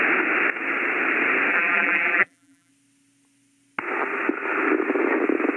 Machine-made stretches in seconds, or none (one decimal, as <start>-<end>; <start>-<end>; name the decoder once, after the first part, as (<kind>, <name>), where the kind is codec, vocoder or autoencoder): 1.5-2.7 (vocoder, BigVGAN v2)